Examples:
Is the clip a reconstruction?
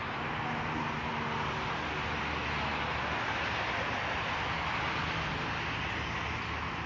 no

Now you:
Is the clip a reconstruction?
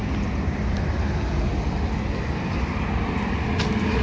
no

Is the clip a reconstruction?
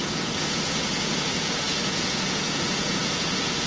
yes